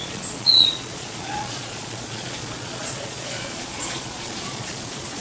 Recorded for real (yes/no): no